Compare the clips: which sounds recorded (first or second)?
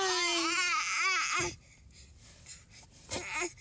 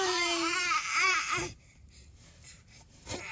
first